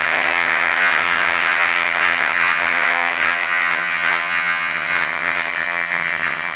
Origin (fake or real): fake